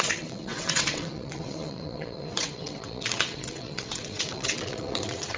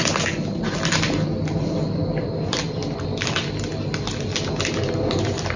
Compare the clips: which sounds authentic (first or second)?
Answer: second